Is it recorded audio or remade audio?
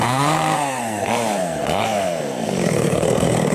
remade